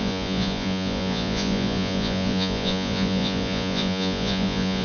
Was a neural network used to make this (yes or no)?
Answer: yes